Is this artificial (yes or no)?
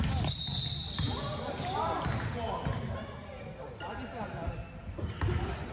no